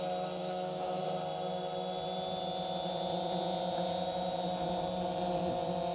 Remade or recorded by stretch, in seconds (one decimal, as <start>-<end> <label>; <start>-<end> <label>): 0.0-0.4 recorded; 0.4-1.0 remade; 1.0-5.9 recorded

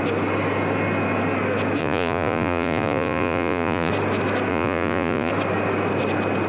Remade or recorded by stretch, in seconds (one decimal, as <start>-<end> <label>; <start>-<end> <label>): 0.0-1.8 recorded; 1.8-3.9 remade; 3.9-4.5 recorded; 4.5-5.3 remade; 5.3-6.5 recorded